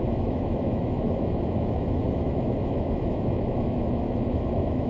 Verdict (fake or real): fake